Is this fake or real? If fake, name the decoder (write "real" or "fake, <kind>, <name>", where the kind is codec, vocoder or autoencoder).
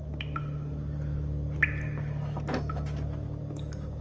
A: real